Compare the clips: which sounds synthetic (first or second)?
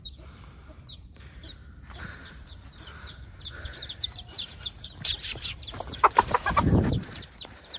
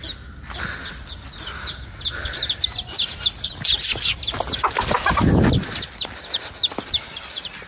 first